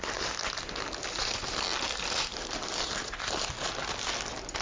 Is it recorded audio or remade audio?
recorded